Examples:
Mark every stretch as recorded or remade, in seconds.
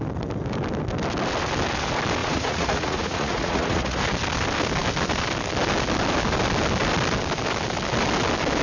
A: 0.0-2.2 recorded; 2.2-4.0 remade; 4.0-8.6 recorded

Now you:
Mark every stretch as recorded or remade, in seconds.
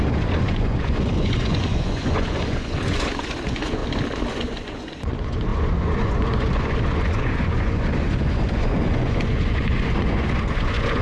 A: 0.0-3.8 remade; 3.8-4.3 recorded; 4.3-11.0 remade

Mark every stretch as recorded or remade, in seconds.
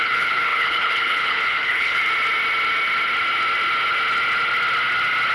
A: 0.0-2.0 remade; 2.0-5.3 recorded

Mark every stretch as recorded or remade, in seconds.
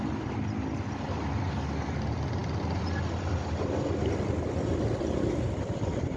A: 0.0-6.2 recorded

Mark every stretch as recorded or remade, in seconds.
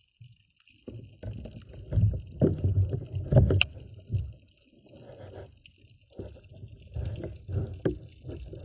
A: 0.0-8.6 recorded